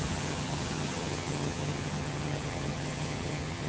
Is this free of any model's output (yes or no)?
no